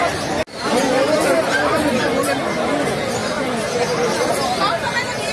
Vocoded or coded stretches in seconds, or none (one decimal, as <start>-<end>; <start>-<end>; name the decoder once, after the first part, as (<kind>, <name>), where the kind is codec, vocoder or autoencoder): none